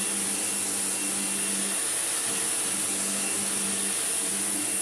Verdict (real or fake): real